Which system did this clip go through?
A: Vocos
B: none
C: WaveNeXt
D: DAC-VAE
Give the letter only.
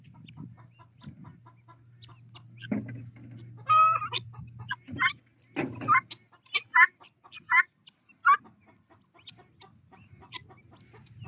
B